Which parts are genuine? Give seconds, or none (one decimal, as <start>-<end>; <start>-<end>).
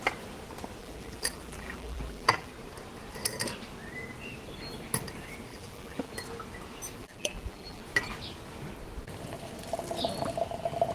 0.0-0.8; 2.5-5.5; 6.1-7.0; 7.8-10.9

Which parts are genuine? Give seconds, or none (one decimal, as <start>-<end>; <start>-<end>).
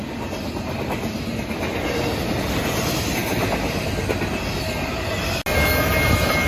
0.0-6.5